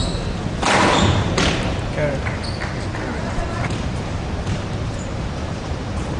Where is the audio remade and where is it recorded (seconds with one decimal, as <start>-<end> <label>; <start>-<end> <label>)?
0.0-0.9 recorded; 0.9-2.4 remade; 2.4-3.5 recorded; 3.5-6.2 remade